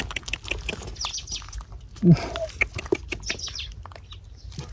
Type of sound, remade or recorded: recorded